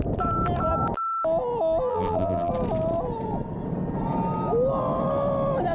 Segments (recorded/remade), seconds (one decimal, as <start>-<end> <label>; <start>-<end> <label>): 0.0-1.9 recorded; 1.9-2.5 remade; 2.5-5.7 recorded